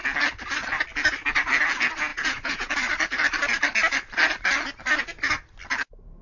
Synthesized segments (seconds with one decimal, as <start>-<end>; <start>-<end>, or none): 2.1-2.7